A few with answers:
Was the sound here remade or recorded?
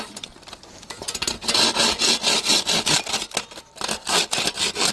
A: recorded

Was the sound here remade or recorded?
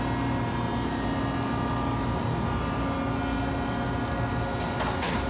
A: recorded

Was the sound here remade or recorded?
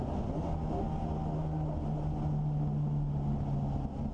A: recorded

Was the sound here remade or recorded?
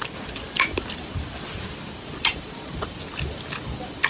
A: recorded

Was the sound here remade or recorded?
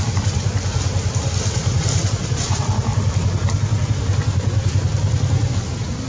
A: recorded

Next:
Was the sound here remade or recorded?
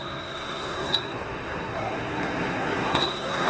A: remade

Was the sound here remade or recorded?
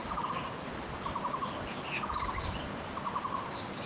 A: recorded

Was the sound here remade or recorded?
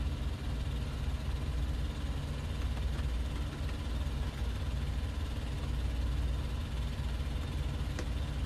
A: recorded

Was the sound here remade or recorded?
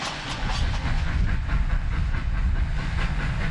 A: remade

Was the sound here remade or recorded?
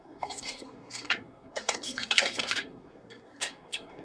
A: remade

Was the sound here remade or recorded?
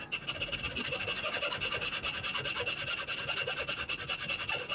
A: recorded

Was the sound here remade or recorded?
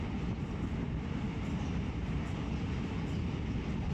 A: recorded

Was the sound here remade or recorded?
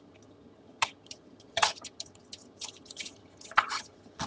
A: remade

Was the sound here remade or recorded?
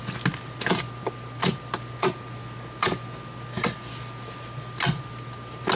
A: recorded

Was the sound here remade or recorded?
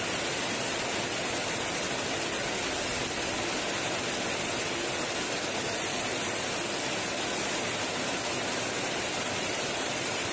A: recorded